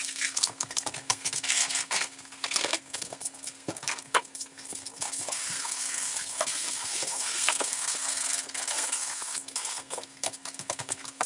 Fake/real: fake